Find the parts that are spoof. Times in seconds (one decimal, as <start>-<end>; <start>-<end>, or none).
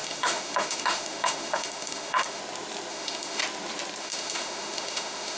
0.0-2.4; 2.9-3.4; 4.0-5.4